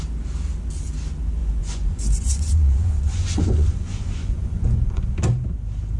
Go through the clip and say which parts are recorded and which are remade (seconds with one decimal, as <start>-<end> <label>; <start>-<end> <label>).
0.0-1.4 recorded; 1.4-5.0 remade; 5.0-6.0 recorded